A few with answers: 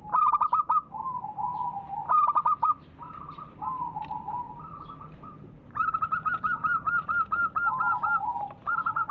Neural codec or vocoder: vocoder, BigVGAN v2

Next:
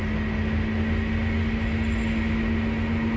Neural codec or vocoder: none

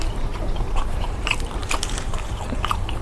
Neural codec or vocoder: vocoder, BigVGAN v2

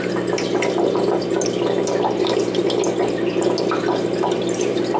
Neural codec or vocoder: none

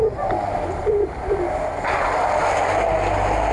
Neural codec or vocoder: none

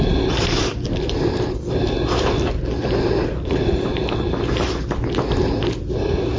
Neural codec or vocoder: none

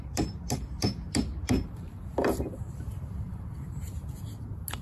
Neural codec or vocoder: vocoder, BigVGAN v2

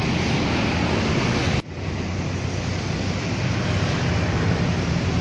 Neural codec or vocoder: none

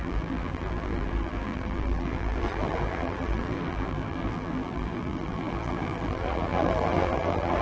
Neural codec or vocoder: vocoder, BigVGAN v2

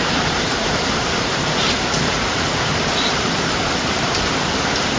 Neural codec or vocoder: vocoder, BigVGAN v2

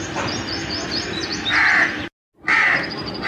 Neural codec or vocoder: none